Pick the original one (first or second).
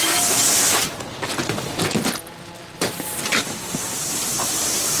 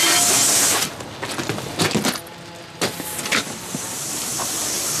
second